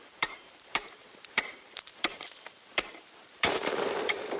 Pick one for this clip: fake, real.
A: fake